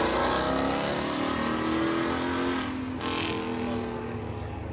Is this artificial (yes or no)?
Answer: no